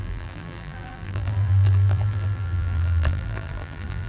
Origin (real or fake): fake